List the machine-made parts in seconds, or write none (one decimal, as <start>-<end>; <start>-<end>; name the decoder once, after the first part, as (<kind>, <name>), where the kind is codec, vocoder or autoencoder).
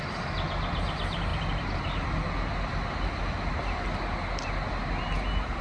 none